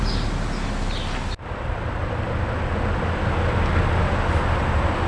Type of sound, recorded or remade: recorded